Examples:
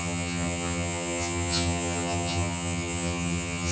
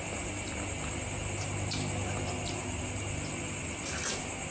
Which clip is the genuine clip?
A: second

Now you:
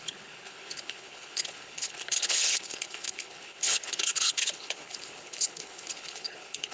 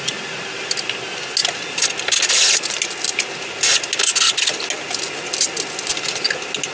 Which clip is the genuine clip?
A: second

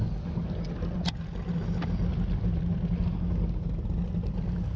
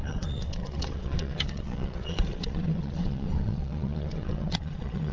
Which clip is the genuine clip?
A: first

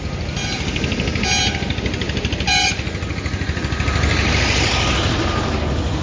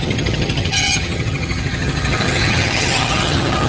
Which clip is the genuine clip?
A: first